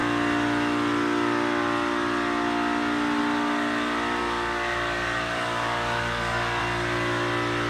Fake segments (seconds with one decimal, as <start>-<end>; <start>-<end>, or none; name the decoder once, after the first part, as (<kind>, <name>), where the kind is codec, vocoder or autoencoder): 4.2-6.6 (codec, DAC)

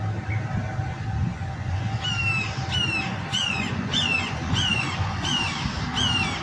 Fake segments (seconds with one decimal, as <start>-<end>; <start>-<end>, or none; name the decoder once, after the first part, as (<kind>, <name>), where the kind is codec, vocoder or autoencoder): 1.3-2.0 (vocoder, Vocos); 3.1-5.4

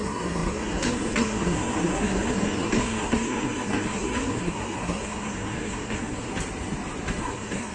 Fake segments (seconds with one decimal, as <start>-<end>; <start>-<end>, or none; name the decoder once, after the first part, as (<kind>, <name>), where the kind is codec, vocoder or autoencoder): 0.0-6.3 (codec, SNAC); 7.2-7.7

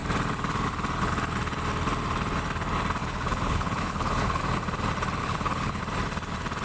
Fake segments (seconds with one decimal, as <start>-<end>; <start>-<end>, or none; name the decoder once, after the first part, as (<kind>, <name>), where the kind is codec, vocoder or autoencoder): 3.0-4.4 (codec, HILCodec); 5.2-5.8

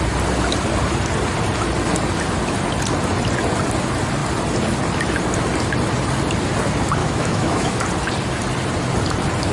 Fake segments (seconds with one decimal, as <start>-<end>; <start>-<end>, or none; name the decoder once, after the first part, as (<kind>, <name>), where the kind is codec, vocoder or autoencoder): 7.0-7.8 (autoencoder, DAC-VAE)

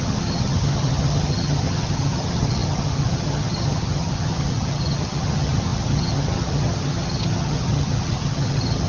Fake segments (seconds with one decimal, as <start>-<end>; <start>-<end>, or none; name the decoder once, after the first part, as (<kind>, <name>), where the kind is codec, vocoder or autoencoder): 0.0-8.9 (vocoder, HiFi-GAN)